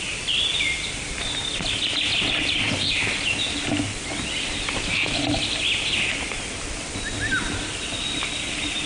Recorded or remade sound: remade